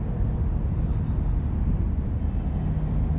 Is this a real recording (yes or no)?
yes